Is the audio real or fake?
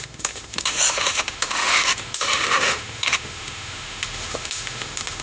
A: fake